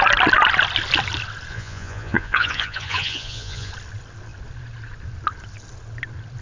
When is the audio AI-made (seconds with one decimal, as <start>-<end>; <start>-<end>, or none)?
1.5-3.7